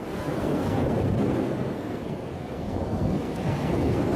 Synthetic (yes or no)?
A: yes